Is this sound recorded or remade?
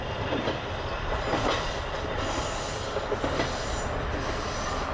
recorded